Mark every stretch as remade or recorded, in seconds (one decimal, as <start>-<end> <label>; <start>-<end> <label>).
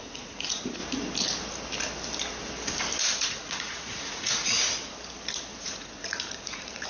0.0-0.8 remade; 0.8-3.0 recorded; 3.0-4.4 remade; 4.4-5.6 recorded; 5.6-6.9 remade